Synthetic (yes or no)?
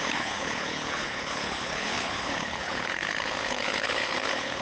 yes